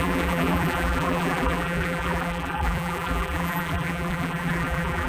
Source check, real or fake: fake